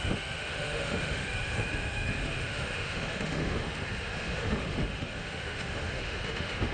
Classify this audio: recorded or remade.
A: remade